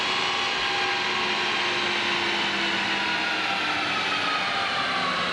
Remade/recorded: recorded